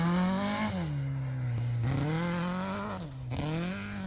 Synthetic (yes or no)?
no